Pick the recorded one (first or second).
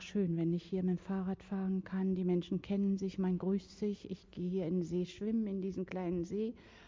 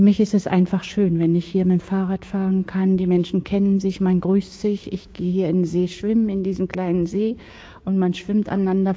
first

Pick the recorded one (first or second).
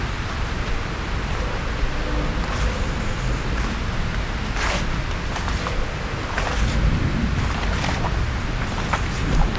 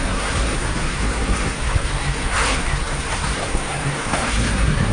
first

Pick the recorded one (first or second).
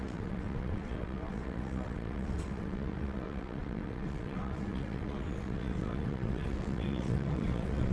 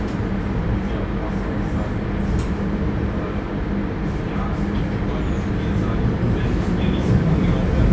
second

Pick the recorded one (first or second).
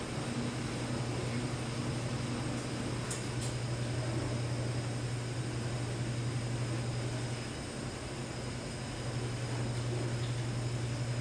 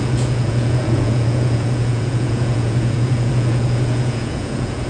first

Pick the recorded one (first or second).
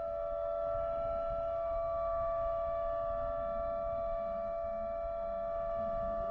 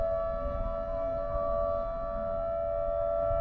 second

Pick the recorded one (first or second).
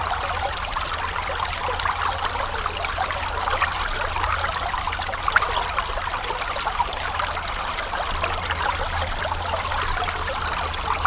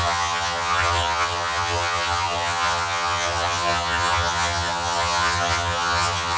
first